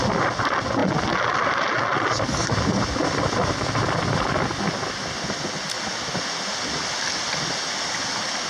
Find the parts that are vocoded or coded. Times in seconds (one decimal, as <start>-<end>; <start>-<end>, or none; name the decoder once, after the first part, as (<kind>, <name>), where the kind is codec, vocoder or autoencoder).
none